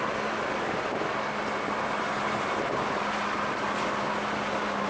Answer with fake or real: real